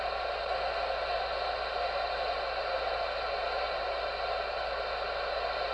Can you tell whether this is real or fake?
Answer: real